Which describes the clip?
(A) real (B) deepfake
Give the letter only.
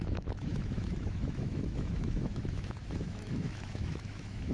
B